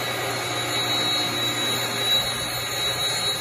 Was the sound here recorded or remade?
recorded